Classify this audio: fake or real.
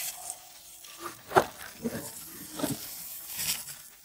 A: real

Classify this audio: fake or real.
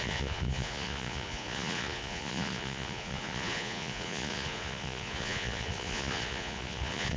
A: fake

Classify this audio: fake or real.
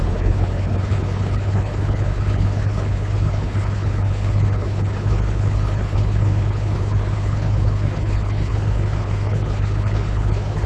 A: fake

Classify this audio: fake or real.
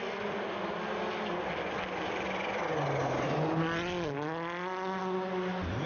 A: real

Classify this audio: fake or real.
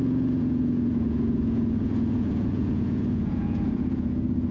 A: fake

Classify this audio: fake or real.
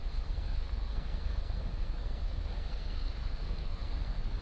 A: fake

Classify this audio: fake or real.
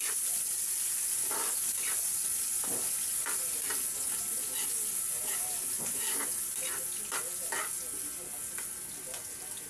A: real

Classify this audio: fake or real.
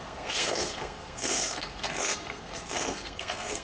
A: fake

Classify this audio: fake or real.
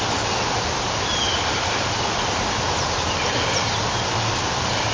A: real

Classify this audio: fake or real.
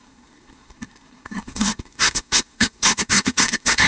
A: fake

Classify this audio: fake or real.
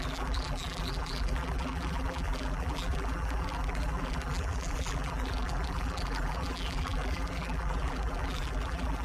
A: fake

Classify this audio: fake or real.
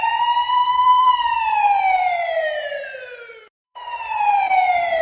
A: fake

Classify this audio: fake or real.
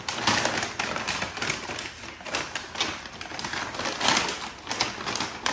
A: real